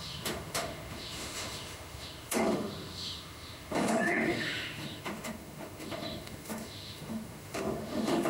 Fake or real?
fake